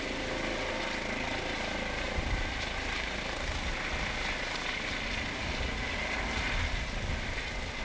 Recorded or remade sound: recorded